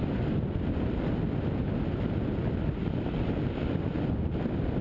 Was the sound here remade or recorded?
recorded